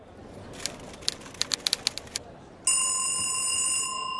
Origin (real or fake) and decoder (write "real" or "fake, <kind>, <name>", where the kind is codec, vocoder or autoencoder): real